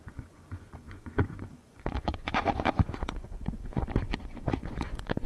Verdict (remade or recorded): remade